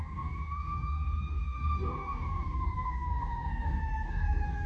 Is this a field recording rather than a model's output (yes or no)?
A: no